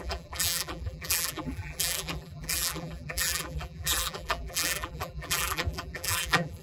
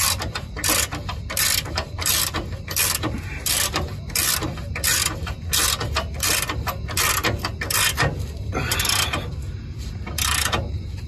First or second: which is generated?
first